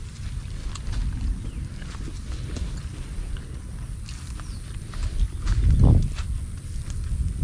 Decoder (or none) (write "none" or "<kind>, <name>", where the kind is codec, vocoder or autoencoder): none